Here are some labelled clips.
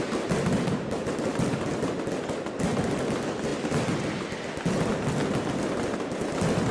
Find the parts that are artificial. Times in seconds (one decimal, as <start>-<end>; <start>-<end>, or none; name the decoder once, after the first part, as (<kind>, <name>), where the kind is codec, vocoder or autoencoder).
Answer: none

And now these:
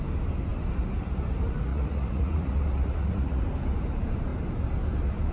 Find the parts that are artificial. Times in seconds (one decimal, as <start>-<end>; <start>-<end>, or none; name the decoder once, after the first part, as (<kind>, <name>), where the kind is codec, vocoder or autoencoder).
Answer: 1.7-3.4 (vocoder, Vocos)

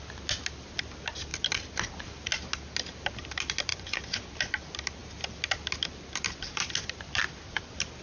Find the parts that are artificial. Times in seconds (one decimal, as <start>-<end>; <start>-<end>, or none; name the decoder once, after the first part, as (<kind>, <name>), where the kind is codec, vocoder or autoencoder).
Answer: 3.7-4.2 (vocoder, Vocos)

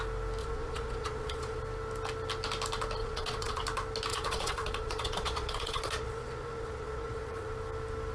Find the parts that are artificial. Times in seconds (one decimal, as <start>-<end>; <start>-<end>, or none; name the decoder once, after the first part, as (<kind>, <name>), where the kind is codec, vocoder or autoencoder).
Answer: 0.4-1.6 (vocoder, Vocos); 3.0-3.6; 4.1-7.5

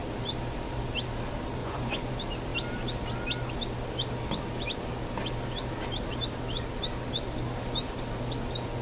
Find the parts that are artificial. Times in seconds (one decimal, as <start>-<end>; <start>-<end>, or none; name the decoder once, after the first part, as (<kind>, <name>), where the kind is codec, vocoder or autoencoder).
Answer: 1.6-2.1 (vocoder, Vocos)

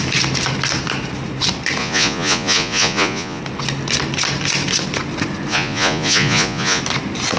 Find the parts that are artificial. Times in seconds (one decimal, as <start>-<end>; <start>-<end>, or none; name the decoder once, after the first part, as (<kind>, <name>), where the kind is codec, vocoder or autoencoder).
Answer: 1.8-3.4 (vocoder, Vocos); 5.5-6.8

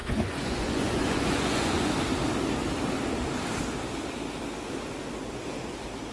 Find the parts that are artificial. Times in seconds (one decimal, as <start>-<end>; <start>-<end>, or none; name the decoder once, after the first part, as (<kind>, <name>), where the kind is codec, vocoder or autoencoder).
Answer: 0.0-1.9 (vocoder, Vocos)